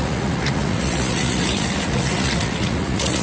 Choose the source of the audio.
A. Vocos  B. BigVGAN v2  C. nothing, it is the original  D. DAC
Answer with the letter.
A